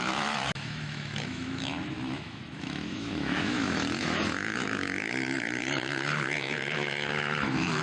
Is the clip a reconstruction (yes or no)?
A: yes